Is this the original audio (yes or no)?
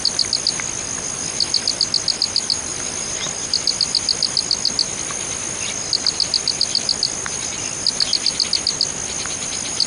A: yes